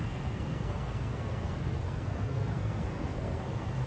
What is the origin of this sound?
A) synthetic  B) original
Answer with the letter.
A